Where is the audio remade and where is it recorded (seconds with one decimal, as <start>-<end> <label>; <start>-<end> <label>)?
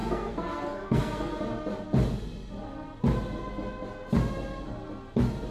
0.0-1.4 remade; 1.4-5.5 recorded